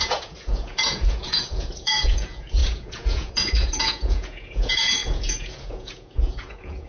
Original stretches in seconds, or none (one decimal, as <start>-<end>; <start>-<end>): none

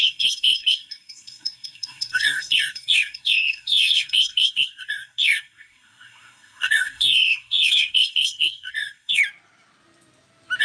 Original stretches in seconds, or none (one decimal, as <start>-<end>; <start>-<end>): 9.2-10.6